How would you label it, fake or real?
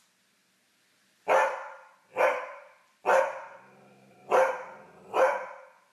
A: real